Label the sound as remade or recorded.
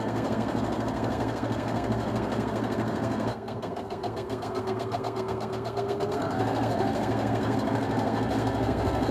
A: remade